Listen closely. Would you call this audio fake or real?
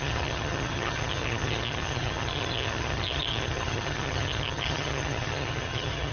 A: fake